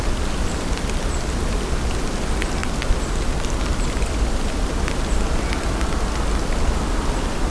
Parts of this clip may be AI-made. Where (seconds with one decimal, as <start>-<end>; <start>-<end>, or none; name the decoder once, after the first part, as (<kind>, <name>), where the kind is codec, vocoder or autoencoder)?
2.6-4.8 (vocoder, BigVGAN v2)